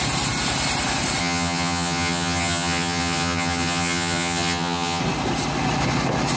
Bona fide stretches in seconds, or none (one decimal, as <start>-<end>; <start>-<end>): 0.0-1.2; 5.0-6.4